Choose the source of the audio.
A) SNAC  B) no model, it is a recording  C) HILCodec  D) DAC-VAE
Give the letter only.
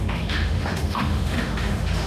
D